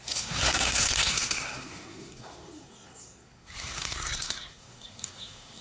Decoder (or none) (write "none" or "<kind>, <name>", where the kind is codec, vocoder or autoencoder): codec, SNAC